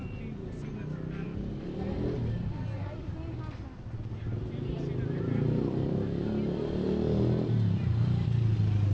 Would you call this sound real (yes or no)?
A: yes